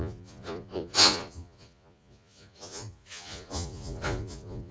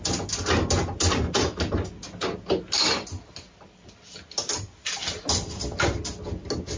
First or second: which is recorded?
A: second